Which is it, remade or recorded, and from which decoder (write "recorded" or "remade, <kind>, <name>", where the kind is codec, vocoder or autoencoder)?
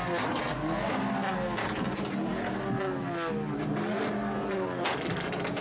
recorded